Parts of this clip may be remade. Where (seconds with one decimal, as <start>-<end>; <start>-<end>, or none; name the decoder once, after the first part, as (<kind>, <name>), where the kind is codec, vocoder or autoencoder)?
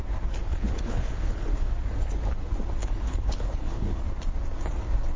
0.4-1.7 (codec, HILCodec); 2.8-4.0